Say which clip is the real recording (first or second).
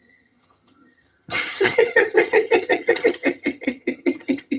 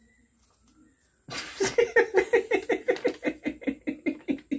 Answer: second